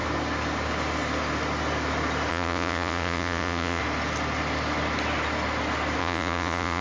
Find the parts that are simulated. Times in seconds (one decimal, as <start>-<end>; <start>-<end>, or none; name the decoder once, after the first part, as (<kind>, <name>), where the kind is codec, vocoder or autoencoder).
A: 2.3-3.8 (vocoder, Vocos); 6.0-6.8

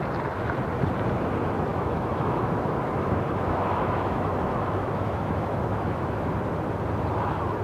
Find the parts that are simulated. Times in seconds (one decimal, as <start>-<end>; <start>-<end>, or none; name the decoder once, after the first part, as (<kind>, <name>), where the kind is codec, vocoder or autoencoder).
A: 1.7-6.3 (autoencoder, DAC-VAE)